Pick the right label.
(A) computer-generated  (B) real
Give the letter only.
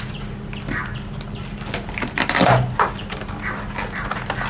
B